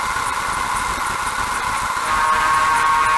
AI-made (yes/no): no